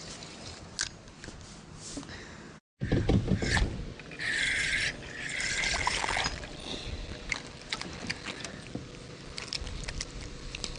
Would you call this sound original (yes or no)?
yes